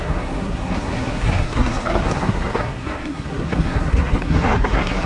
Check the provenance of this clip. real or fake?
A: fake